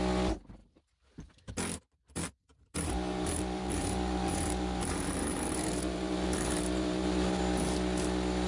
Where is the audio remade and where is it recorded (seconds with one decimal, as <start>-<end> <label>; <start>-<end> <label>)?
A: 0.0-2.5 recorded; 2.5-7.4 remade; 7.4-8.5 recorded